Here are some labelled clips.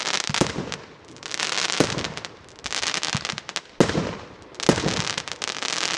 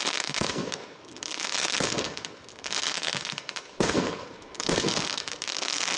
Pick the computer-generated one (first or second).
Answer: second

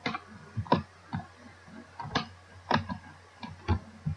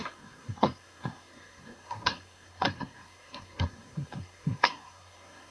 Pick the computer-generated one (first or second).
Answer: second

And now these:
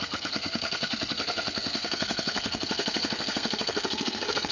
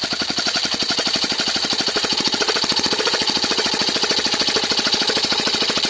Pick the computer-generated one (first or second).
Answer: first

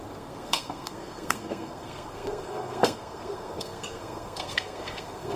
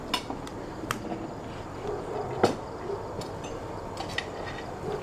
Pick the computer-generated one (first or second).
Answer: first